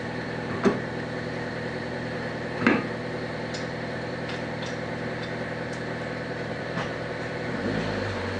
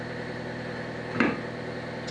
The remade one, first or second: first